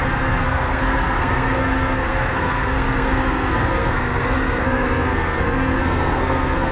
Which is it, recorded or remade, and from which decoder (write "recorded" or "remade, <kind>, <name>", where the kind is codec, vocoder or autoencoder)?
remade, codec, SNAC